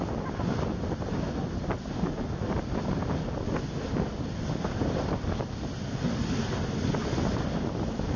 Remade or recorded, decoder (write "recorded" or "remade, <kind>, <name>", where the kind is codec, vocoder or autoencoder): recorded